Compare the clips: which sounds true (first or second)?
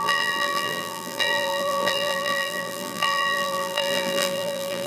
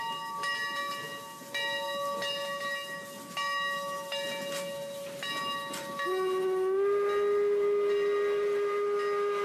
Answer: second